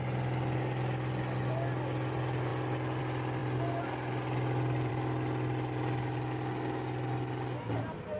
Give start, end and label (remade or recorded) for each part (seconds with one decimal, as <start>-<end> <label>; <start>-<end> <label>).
0.0-8.2 recorded

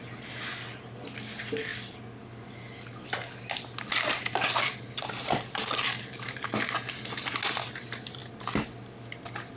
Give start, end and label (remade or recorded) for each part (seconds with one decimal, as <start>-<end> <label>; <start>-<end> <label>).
0.0-9.6 recorded

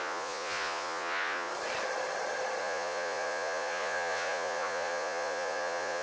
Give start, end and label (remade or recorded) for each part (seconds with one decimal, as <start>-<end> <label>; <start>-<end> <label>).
0.0-1.5 remade; 1.5-2.6 recorded; 2.6-6.0 remade

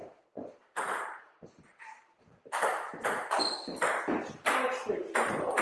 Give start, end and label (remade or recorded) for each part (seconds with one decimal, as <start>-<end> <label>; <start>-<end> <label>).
0.0-3.4 remade; 3.4-5.6 recorded

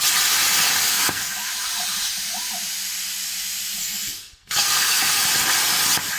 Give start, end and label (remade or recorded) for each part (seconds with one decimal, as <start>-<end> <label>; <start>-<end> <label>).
0.0-0.9 recorded; 0.9-1.5 remade; 1.5-3.8 recorded; 3.8-5.2 remade; 5.2-6.2 recorded